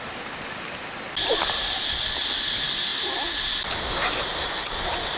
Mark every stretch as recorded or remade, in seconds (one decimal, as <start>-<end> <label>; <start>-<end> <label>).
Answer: 0.0-5.2 recorded